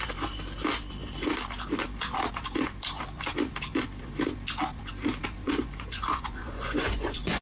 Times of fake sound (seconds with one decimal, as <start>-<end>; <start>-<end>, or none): 5.4-7.4